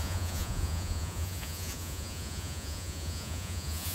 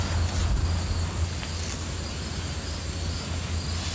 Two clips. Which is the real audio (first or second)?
second